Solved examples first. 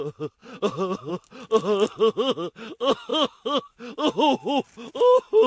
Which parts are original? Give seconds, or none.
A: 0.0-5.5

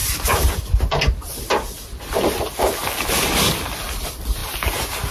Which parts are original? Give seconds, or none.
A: 0.0-5.1

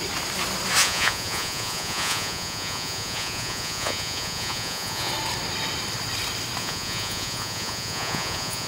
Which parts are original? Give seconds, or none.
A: 0.0-0.8; 5.1-6.6

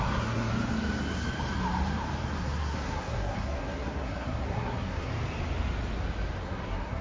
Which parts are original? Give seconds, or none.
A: 0.5-2.4; 5.1-6.4

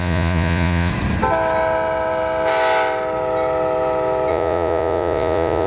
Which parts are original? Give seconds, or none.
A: 0.9-4.3